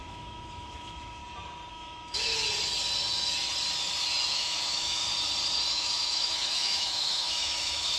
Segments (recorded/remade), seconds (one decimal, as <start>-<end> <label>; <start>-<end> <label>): 0.0-1.2 remade; 1.2-1.7 recorded; 1.7-2.3 remade; 2.3-4.3 recorded; 4.3-5.0 remade; 5.0-5.7 recorded; 5.7-8.0 remade